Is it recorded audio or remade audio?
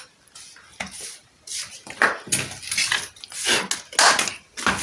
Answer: recorded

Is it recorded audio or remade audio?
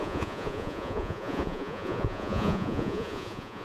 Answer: remade